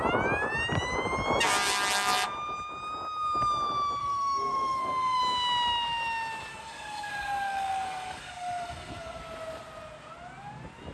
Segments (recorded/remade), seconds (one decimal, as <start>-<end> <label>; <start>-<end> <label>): 0.0-4.0 recorded; 4.0-5.2 remade; 5.2-6.5 recorded; 6.5-9.2 remade; 9.2-10.9 recorded